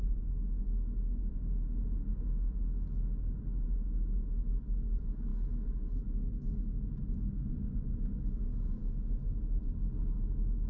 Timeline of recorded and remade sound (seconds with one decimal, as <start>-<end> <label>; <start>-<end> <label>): 0.0-2.1 recorded; 2.1-2.6 remade; 2.6-10.7 recorded